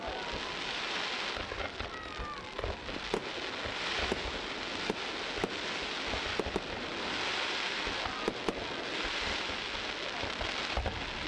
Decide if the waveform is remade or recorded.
recorded